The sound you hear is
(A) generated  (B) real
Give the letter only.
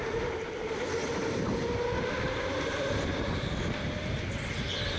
B